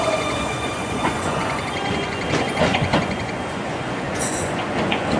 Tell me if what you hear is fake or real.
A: fake